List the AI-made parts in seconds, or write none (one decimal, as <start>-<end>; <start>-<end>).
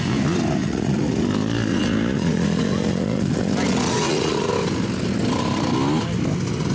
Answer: 0.6-1.2; 1.7-4.5